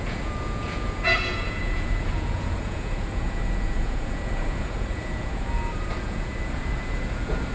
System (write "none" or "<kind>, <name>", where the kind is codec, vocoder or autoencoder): vocoder, Vocos